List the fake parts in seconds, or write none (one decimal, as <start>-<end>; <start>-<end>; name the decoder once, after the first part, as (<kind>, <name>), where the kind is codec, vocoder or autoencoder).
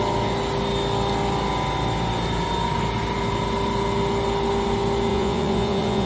5.1-6.1 (vocoder, Vocos)